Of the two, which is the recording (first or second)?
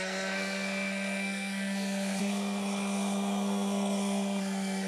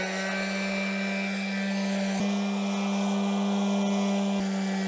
second